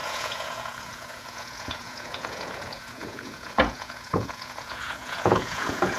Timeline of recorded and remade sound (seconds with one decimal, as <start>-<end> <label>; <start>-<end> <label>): 0.0-6.0 remade